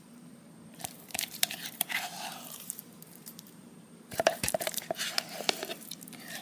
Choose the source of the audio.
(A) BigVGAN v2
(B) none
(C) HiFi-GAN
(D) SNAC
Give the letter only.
A